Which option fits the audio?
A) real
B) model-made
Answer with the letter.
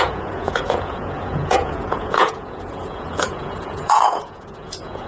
B